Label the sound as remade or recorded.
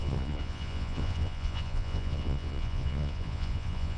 remade